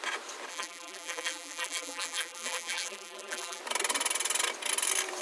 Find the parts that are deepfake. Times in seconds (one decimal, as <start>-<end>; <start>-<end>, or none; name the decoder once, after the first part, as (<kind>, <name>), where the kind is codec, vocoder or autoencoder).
0.5-3.6 (vocoder, BigVGAN v2)